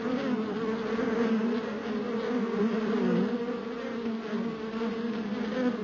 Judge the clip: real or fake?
real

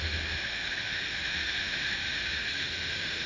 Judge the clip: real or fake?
fake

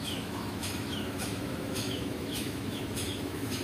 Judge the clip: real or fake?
fake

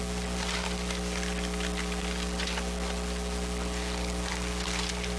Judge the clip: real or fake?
real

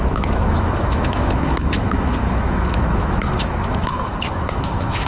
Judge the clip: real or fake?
fake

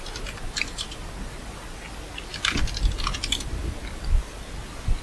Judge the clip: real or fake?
real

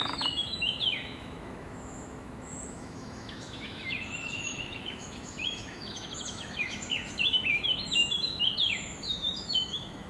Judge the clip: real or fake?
fake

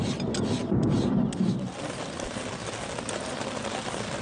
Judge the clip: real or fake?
real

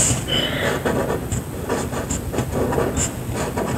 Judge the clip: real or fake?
real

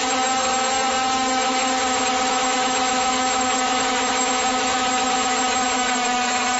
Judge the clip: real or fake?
fake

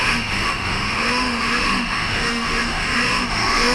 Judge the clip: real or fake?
fake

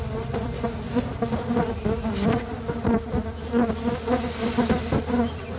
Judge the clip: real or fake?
real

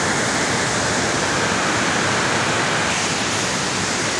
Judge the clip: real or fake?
real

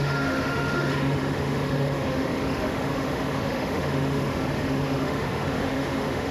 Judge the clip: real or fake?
fake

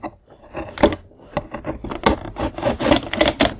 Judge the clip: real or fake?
real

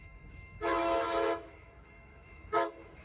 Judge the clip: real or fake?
fake